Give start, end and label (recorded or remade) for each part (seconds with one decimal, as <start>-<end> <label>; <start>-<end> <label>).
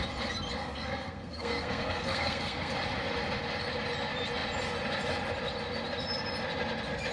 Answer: 0.0-0.6 recorded; 0.6-2.7 remade; 2.7-7.1 recorded